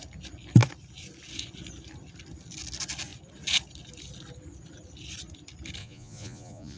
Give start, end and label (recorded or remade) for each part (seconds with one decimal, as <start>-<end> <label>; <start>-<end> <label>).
0.0-5.8 recorded; 5.8-6.8 remade